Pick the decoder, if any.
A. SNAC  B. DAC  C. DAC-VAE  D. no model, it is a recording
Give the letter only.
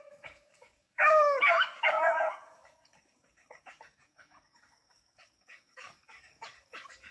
B